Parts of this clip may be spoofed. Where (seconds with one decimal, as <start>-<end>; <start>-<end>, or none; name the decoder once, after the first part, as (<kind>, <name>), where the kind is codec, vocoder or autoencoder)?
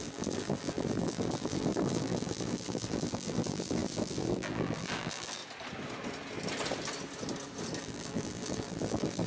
0.0-5.4 (vocoder, BigVGAN v2); 7.8-9.3